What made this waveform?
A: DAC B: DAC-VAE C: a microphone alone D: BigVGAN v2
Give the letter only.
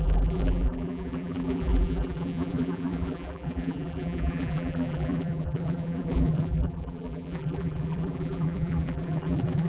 D